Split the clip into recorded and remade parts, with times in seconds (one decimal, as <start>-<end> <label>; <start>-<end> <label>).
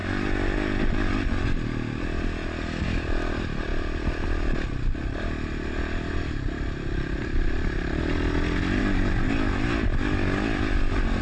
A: 0.0-11.2 recorded